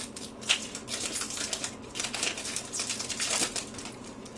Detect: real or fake real